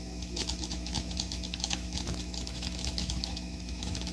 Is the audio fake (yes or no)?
yes